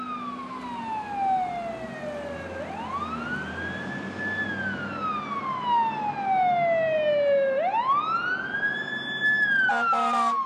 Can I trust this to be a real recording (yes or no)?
yes